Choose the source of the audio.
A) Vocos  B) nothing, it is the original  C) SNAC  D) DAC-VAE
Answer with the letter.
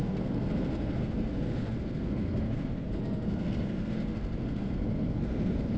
C